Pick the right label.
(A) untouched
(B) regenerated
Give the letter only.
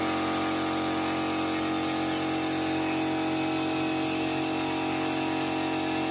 A